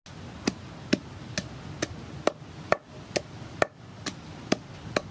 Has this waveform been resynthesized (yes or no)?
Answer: no